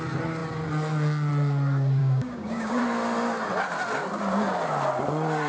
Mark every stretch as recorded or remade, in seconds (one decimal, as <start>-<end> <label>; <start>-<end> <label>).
0.0-2.0 recorded; 2.0-2.8 remade; 2.8-5.5 recorded